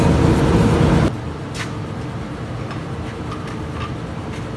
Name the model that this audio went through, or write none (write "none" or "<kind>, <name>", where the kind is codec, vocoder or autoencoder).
none